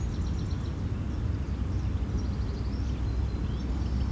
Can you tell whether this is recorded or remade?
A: recorded